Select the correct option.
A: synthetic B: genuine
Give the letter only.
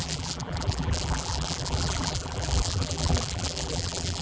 A